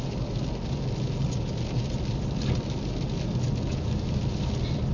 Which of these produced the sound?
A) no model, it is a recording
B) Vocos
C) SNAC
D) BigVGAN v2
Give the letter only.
A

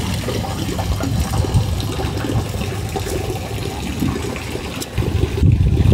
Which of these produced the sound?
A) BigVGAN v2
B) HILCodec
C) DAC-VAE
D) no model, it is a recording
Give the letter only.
D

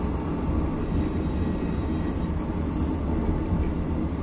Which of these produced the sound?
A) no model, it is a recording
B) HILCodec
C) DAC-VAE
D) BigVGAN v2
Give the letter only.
A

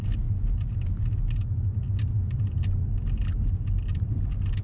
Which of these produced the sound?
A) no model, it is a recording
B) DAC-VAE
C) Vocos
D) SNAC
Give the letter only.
A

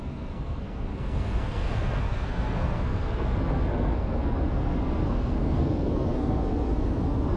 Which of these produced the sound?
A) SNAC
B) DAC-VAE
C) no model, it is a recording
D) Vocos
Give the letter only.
A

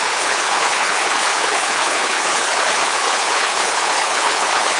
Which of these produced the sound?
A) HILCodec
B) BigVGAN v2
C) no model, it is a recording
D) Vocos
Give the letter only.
A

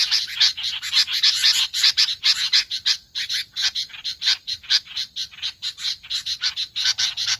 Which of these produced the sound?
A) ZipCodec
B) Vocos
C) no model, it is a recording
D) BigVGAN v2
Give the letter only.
C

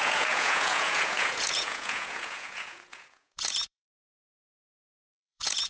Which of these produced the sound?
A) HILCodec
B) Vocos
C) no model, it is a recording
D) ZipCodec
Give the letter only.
B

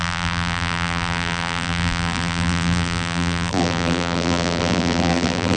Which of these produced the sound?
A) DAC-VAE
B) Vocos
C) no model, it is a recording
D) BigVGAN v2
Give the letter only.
D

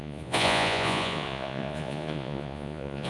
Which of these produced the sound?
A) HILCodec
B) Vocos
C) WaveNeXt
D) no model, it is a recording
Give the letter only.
B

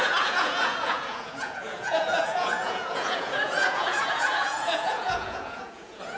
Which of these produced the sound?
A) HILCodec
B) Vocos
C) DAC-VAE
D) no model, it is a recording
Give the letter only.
B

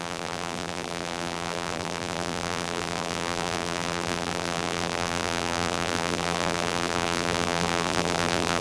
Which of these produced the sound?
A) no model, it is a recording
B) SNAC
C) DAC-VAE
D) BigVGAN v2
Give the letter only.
D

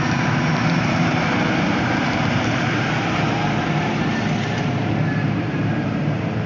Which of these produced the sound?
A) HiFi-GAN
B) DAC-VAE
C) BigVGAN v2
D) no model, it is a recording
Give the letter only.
C